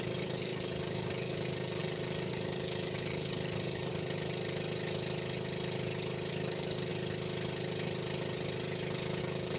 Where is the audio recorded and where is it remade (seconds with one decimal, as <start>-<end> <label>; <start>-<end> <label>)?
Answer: 0.0-3.9 remade; 3.9-6.3 recorded; 6.3-6.9 remade; 6.9-9.2 recorded; 9.2-9.6 remade